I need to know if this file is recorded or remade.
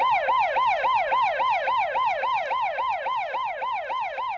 recorded